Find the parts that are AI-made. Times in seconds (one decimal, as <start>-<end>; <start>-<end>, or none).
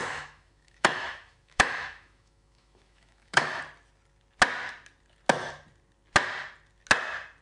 0.0-3.6